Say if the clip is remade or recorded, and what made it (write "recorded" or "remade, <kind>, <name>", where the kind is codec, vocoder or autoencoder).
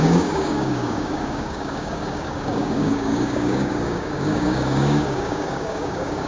remade, codec, DAC